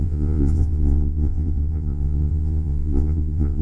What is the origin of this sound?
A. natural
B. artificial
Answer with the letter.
B